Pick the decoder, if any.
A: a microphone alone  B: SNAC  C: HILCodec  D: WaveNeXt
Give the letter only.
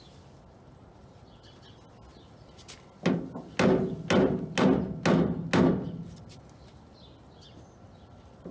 A